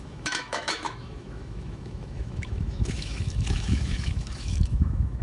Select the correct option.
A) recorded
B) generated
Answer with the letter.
B